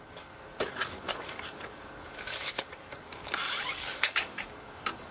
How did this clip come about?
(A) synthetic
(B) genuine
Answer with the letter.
A